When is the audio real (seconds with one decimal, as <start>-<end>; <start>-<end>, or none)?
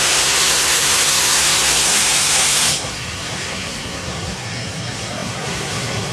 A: none